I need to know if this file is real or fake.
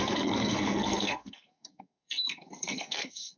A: fake